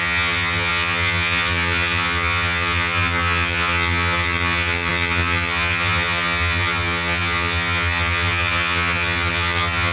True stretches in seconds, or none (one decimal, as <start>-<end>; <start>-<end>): none

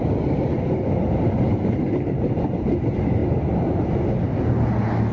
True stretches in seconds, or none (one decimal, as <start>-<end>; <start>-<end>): 0.0-5.1

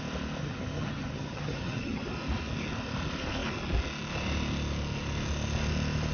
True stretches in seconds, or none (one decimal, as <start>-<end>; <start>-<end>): 0.0-0.4; 2.0-6.1